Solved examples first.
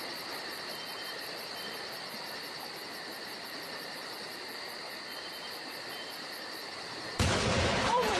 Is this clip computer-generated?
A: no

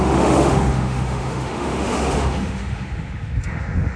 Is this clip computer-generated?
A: yes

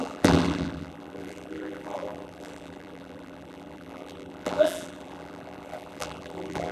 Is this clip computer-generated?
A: yes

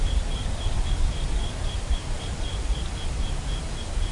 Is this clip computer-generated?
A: yes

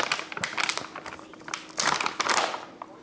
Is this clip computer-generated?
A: no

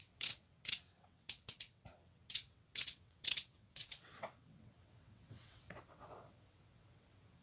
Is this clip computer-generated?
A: yes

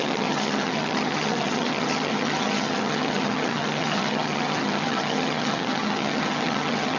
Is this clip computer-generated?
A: yes